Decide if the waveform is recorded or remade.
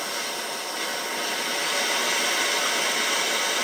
recorded